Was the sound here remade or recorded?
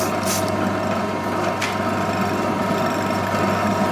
recorded